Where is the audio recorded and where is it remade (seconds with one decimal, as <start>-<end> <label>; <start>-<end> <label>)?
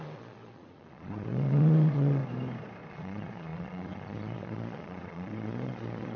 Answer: 0.0-2.2 remade; 2.2-2.9 recorded; 2.9-6.2 remade